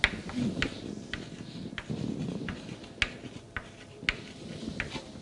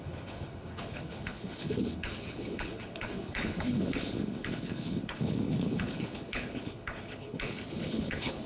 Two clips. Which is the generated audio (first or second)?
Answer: second